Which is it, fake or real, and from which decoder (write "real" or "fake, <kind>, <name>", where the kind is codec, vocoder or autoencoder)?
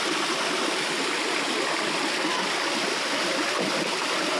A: real